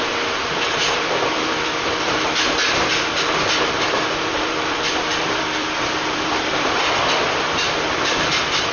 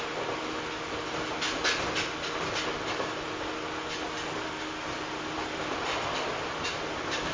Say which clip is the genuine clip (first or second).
second